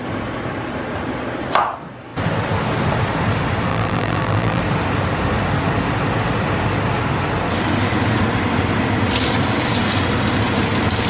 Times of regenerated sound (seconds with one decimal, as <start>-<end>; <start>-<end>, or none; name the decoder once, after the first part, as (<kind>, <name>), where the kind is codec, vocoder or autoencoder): 3.7-4.6 (vocoder, BigVGAN v2)